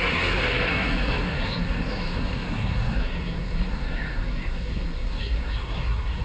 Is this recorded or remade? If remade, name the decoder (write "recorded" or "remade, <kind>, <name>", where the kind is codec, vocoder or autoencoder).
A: remade, codec, SNAC